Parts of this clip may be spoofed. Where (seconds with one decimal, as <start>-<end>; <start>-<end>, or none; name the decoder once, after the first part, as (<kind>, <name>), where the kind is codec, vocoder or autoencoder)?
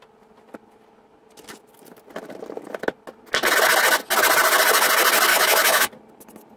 5.3-5.9 (autoencoder, DAC-VAE)